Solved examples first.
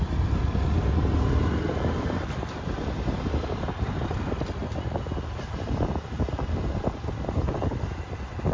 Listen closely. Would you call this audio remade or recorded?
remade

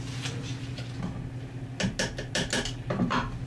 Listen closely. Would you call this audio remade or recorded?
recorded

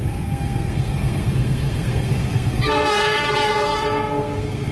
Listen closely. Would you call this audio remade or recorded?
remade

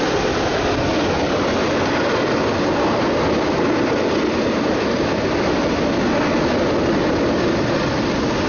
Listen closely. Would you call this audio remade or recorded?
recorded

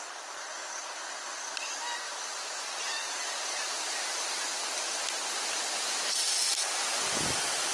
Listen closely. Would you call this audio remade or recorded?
recorded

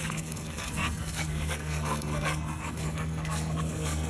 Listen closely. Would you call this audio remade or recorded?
remade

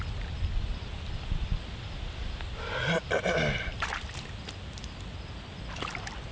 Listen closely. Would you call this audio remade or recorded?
recorded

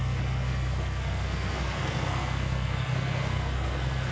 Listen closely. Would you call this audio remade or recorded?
remade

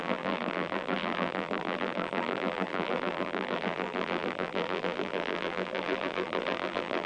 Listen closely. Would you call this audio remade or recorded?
remade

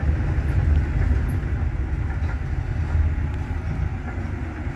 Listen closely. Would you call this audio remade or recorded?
recorded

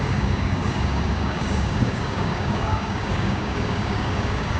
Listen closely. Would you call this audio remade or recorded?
remade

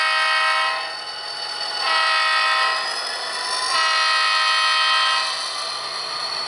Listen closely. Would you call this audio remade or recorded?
recorded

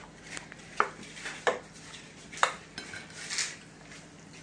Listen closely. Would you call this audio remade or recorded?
recorded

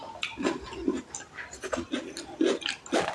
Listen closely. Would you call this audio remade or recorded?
recorded